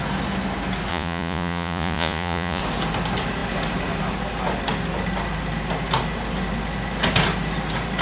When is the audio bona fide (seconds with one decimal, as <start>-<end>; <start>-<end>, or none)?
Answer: 0.0-0.9; 2.6-8.0